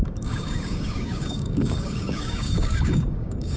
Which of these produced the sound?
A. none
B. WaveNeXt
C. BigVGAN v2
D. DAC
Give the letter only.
D